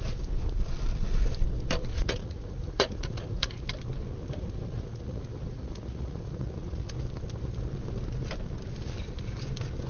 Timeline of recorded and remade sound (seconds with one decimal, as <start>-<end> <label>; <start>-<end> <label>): 0.0-1.9 recorded; 1.9-3.6 remade; 3.6-4.2 recorded; 4.2-6.9 remade; 6.9-9.9 recorded